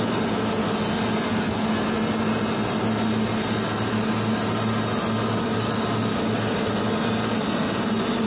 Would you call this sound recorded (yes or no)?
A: yes